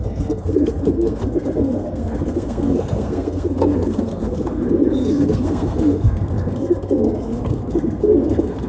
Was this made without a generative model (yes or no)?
no